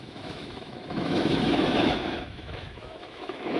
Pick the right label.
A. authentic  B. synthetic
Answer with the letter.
B